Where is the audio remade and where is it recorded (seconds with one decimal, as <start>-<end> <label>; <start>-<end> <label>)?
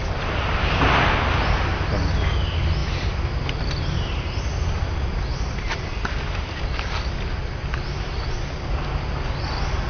0.0-7.6 recorded; 7.6-8.4 remade; 8.4-9.9 recorded